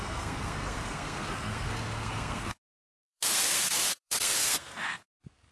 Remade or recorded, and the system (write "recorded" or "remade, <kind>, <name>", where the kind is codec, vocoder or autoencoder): remade, codec, SNAC